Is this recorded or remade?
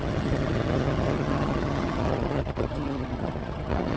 remade